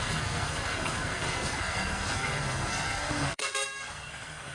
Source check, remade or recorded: remade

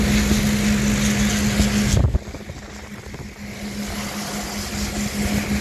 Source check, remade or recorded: recorded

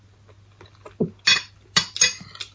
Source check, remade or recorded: recorded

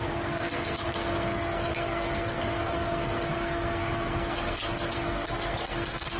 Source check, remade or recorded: remade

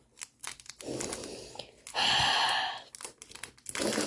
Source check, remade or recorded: recorded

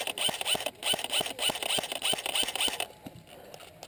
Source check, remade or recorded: recorded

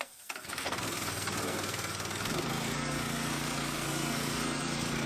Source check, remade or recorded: remade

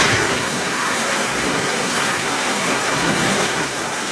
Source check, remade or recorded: remade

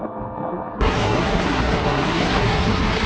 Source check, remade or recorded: remade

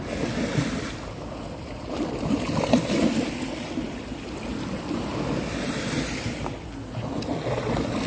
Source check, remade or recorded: recorded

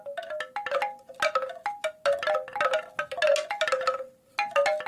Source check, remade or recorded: recorded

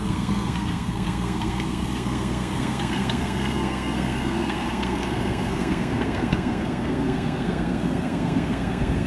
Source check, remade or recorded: remade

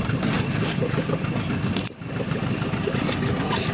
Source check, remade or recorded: recorded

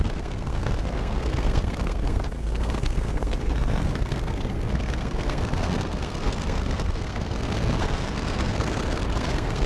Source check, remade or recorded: remade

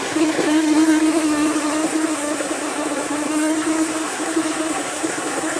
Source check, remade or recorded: remade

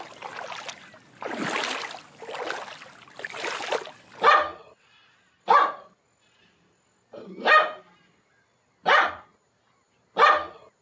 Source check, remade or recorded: recorded